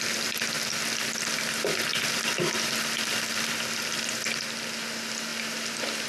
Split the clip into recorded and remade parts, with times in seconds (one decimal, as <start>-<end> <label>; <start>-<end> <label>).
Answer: 0.0-6.1 recorded